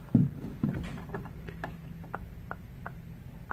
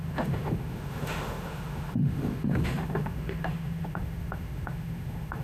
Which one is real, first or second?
first